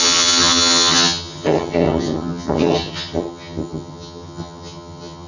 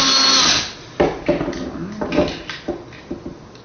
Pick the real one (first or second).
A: second